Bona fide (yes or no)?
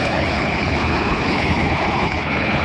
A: no